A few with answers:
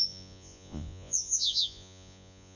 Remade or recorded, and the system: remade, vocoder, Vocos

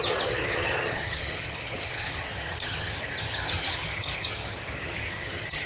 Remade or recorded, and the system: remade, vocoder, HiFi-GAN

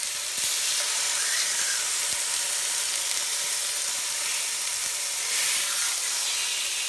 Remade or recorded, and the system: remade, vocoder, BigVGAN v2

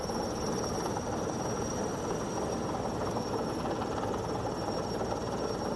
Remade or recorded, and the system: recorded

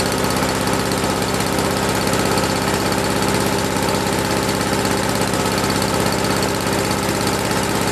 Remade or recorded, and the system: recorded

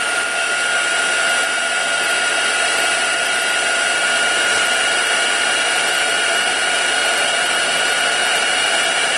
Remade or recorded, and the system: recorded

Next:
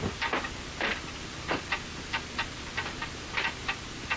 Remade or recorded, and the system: recorded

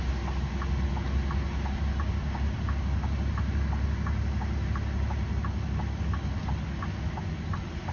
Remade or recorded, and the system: recorded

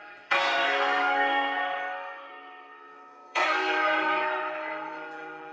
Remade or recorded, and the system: remade, codec, SNAC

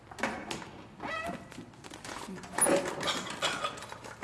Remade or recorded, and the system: recorded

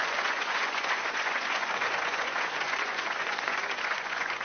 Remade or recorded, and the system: remade, vocoder, Vocos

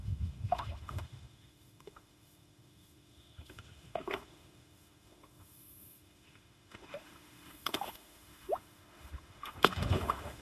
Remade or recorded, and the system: remade, autoencoder, DAC-VAE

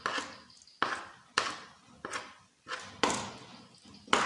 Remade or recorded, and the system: recorded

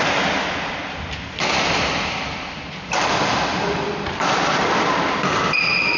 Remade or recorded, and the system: recorded